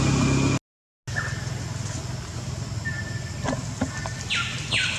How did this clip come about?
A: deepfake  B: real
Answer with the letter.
B